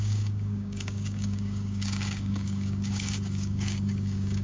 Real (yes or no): no